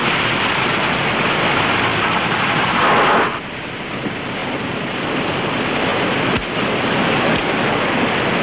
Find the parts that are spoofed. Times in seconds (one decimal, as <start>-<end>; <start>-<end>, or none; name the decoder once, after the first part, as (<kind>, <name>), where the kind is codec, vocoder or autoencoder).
1.9-2.8 (vocoder, BigVGAN v2); 4.4-5.4